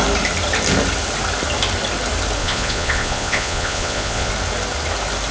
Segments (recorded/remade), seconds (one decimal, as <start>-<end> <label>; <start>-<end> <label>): 0.0-2.4 recorded; 2.4-4.3 remade; 4.3-5.3 recorded